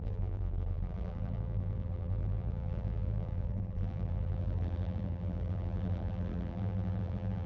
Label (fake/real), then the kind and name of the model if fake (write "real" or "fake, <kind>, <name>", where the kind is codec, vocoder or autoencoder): fake, vocoder, BigVGAN v2